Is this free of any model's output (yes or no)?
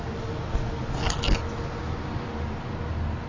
yes